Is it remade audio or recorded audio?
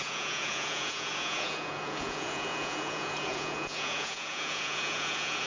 remade